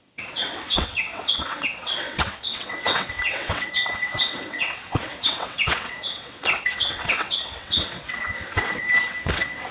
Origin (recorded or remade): remade